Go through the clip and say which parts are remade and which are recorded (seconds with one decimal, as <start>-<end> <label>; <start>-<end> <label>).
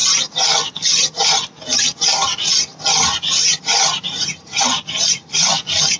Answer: 0.0-6.0 recorded